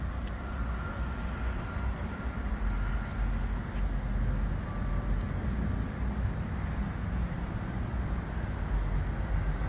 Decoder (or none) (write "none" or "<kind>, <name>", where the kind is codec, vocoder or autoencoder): none